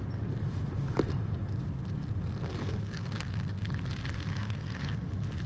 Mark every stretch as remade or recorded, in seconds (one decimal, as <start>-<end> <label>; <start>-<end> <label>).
0.0-2.6 recorded; 2.6-3.7 remade; 3.7-4.3 recorded; 4.3-5.1 remade; 5.1-5.5 recorded

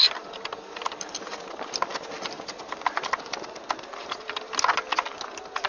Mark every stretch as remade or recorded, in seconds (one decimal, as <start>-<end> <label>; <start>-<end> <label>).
0.0-5.7 recorded

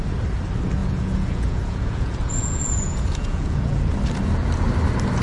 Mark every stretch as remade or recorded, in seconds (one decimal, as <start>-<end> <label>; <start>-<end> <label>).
0.0-0.8 recorded; 0.8-3.9 remade; 3.9-5.2 recorded